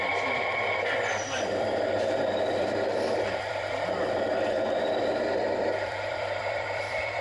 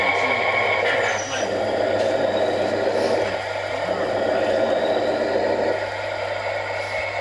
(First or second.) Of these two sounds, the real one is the second